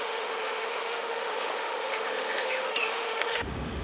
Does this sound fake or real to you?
fake